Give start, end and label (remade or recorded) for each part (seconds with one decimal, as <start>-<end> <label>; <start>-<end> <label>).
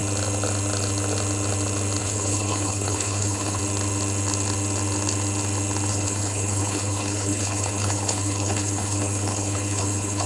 0.0-2.0 recorded; 2.0-3.6 remade; 3.6-5.9 recorded; 5.9-10.3 remade